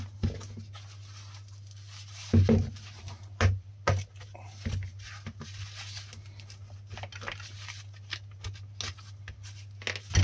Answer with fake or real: real